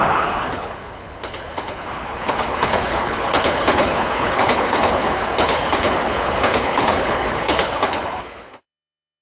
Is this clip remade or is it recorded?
remade